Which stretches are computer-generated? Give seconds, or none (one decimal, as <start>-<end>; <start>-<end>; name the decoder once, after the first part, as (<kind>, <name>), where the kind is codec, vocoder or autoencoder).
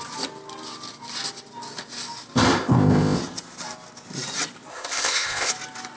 2.6-3.2 (codec, ZipCodec); 4.7-5.5